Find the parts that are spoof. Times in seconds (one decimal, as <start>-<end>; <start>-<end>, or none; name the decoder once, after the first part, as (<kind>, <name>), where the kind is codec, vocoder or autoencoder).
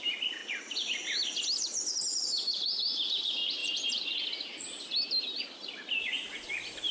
0.0-0.4 (vocoder, BigVGAN v2); 2.2-6.2